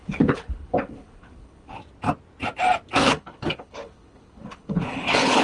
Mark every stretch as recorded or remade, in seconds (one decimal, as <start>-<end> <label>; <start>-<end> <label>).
0.0-1.8 remade; 1.8-3.0 recorded; 3.0-5.4 remade